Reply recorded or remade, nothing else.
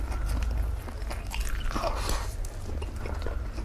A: recorded